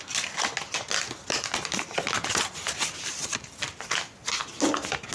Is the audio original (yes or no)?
yes